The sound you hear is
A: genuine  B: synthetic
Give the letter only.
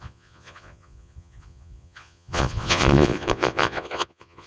B